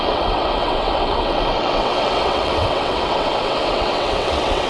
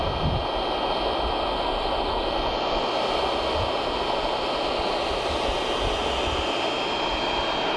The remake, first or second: first